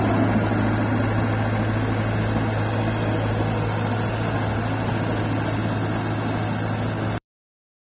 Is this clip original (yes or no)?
yes